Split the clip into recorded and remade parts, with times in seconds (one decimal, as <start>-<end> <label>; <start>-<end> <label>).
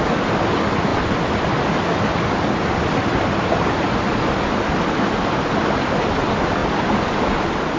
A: 0.0-7.8 recorded